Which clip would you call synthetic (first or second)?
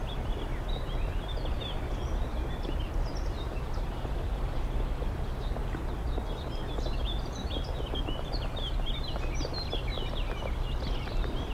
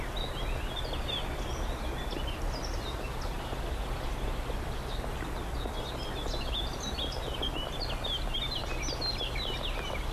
first